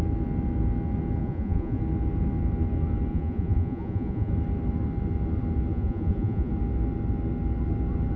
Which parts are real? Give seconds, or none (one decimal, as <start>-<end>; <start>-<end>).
0.0-1.2; 1.8-3.1; 4.3-5.7; 6.5-8.2